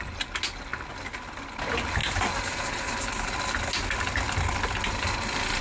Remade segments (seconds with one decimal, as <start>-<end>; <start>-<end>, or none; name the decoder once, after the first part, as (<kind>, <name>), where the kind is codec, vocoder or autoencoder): none